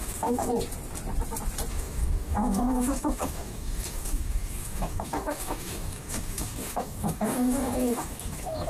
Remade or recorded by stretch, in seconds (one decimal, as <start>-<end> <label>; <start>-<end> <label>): 0.0-0.5 remade; 0.5-1.7 recorded; 1.7-8.7 remade